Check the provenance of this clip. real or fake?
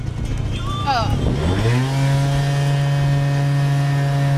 real